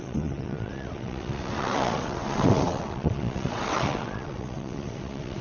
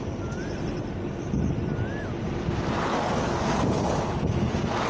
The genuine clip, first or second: second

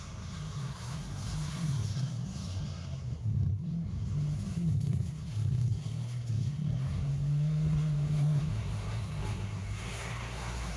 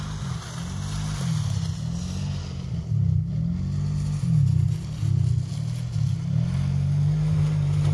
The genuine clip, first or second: second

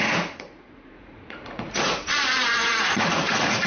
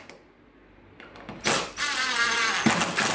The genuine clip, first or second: second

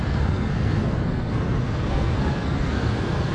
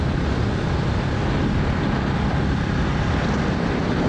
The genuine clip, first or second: second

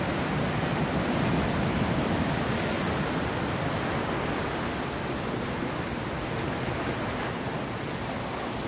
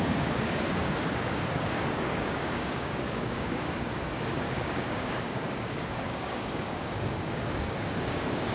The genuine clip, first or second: first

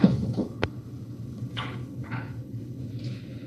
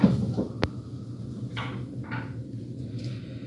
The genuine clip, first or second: second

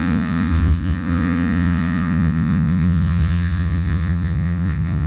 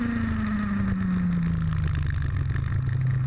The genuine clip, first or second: second